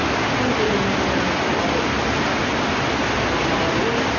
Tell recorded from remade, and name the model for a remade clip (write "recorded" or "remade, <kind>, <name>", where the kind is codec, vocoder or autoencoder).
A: recorded